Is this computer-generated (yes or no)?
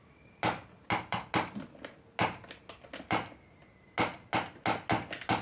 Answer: no